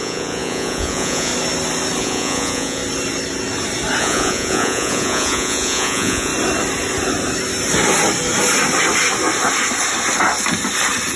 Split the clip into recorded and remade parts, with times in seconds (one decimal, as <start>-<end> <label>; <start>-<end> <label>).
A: 0.0-1.3 remade; 1.3-2.0 recorded; 2.0-2.8 remade; 2.8-4.0 recorded; 4.0-6.3 remade; 6.3-11.2 recorded